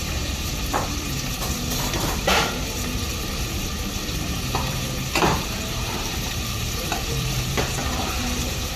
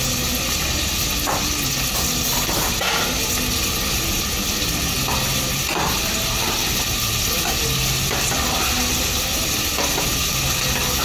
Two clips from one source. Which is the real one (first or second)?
second